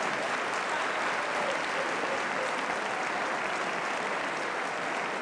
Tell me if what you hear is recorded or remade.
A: recorded